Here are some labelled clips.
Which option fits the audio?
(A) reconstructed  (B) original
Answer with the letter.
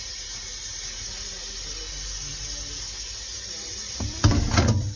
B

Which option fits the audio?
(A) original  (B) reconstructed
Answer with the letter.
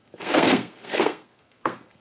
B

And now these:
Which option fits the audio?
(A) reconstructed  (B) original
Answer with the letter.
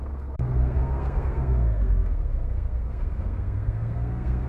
A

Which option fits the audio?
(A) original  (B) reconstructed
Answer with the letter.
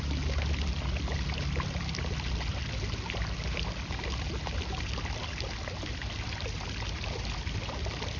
A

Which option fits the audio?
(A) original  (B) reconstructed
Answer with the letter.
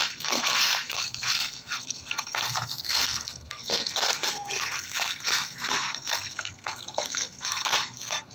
B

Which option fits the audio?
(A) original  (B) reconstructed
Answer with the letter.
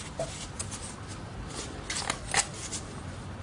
A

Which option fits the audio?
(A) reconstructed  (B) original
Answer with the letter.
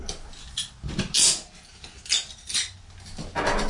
B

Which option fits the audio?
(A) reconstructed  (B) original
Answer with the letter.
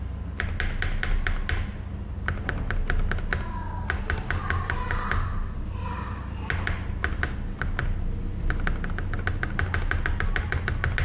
B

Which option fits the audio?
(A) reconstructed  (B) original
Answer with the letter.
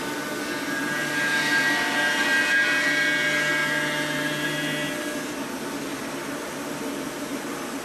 B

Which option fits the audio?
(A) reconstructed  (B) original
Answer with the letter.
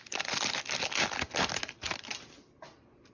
B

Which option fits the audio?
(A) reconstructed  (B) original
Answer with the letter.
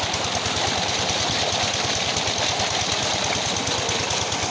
B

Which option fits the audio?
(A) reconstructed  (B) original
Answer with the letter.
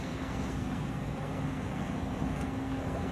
A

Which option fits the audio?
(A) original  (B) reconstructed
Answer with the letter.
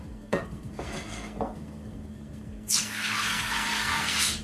B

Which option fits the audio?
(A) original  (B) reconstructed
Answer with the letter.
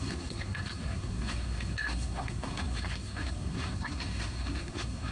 B